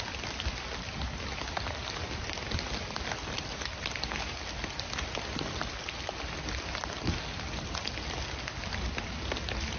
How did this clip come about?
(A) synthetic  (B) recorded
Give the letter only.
B